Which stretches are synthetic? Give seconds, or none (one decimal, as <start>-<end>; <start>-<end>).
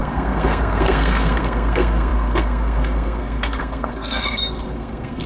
0.0-5.3